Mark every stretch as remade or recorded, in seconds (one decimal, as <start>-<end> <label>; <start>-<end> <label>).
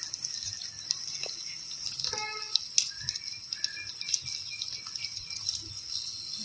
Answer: 0.0-6.4 recorded